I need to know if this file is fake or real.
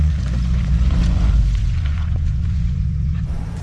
fake